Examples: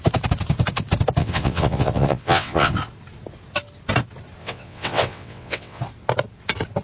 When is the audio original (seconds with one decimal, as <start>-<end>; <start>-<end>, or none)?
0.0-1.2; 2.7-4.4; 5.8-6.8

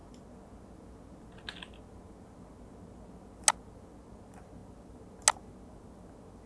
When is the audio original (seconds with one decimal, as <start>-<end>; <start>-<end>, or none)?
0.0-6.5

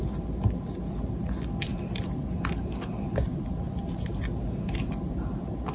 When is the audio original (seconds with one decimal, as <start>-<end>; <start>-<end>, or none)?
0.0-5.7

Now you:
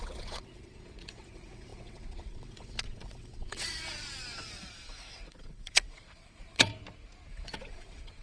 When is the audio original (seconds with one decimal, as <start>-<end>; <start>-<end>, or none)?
6.7-7.3

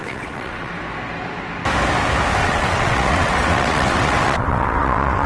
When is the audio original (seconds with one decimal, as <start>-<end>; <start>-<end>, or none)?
0.7-2.4

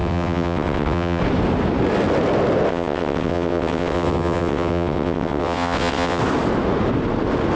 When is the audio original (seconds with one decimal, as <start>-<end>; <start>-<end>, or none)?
1.2-2.7; 6.2-7.6